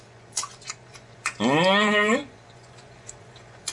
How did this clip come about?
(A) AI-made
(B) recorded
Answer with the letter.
A